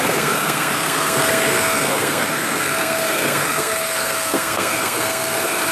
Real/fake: fake